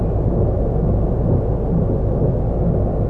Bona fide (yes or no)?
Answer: yes